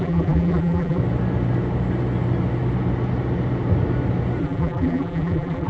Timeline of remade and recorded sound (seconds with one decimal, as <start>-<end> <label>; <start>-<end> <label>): 0.0-1.0 remade; 1.0-4.4 recorded; 4.4-5.7 remade